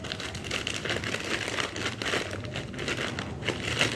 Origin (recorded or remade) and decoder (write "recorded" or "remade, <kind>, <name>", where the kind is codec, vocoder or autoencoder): recorded